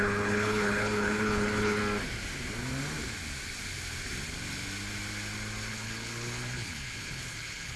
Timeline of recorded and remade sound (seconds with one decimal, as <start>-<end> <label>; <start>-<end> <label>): 0.0-1.8 remade; 1.8-5.7 recorded; 5.7-7.8 remade